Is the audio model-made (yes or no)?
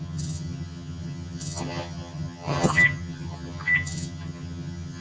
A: yes